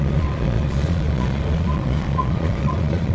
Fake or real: fake